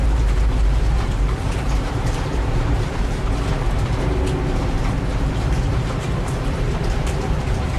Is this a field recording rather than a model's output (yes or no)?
no